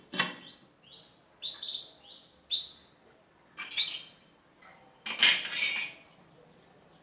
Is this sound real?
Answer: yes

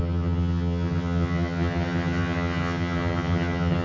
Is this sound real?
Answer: no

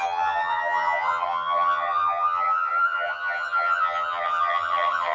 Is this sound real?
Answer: no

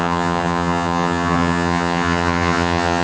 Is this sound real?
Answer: no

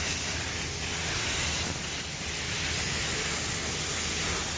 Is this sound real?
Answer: yes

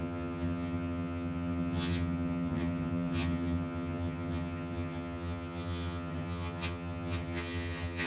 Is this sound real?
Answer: no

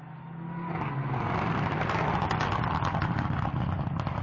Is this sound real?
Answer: yes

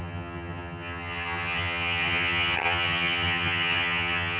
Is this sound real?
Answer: no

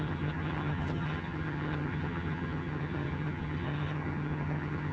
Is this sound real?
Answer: no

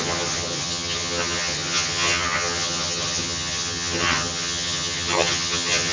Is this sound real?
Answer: no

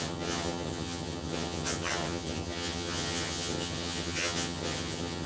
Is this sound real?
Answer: no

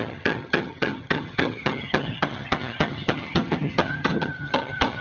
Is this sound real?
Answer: no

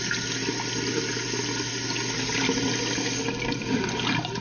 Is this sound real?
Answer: yes